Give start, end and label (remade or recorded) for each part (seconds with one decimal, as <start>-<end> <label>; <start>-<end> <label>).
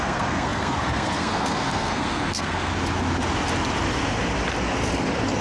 0.0-2.7 remade; 2.7-5.4 recorded